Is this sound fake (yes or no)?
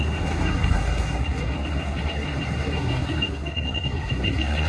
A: yes